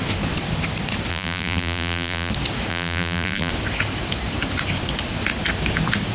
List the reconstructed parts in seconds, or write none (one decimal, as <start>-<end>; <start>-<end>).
1.1-2.3; 2.7-3.5